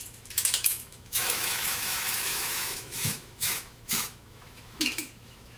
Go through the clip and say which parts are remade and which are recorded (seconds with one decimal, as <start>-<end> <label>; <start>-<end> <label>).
0.0-5.6 remade